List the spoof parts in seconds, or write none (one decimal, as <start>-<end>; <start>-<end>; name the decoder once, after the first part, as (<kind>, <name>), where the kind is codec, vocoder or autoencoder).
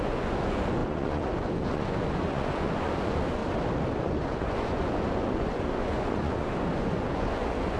0.0-3.4 (vocoder, Vocos); 4.0-7.8